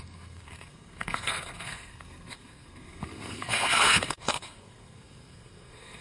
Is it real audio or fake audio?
fake